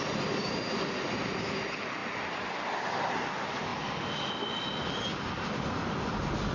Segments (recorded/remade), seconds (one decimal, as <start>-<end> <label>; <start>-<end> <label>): 0.0-6.5 recorded